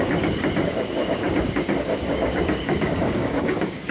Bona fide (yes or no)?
no